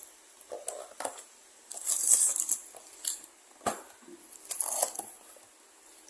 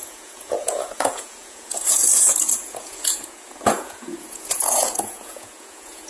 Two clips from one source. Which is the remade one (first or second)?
second